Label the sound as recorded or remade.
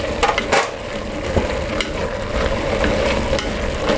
recorded